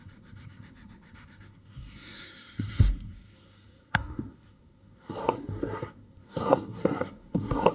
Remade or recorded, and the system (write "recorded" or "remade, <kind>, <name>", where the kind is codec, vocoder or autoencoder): remade, codec, SNAC